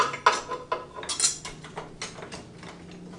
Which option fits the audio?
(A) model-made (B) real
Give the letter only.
B